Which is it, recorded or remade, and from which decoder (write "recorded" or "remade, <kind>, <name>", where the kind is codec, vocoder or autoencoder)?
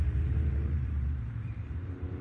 remade, vocoder, BigVGAN v2